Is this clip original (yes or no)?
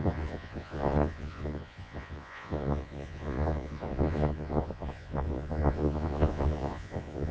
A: no